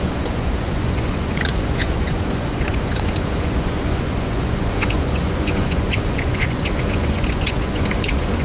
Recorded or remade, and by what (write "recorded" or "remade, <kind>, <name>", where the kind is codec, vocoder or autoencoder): remade, vocoder, Vocos